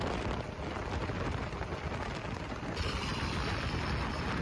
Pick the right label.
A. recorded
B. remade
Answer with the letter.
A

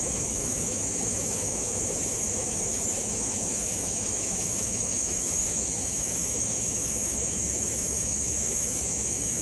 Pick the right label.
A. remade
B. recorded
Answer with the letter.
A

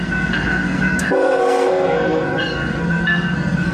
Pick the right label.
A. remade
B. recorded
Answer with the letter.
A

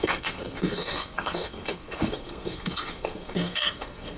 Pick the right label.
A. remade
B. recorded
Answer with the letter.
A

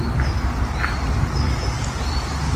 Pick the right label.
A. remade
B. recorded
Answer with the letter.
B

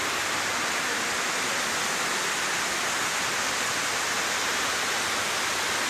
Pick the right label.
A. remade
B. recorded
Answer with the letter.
B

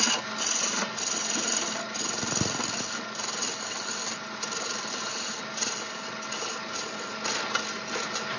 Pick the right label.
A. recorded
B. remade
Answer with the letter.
A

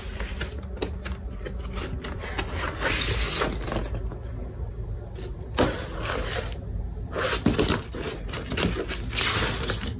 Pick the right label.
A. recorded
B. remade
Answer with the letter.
A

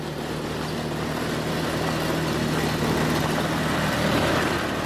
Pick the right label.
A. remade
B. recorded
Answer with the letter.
B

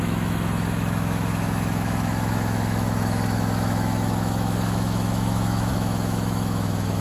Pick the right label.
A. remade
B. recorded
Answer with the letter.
A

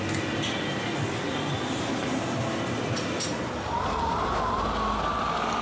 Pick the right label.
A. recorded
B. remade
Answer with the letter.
A